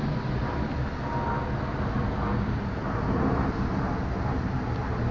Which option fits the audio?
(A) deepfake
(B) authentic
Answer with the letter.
B